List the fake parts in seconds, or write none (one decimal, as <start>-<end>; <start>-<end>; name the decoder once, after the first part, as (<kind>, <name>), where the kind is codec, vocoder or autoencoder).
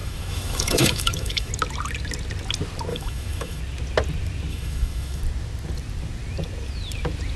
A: 0.0-1.5 (autoencoder, DAC-VAE); 2.9-3.6; 4.5-5.2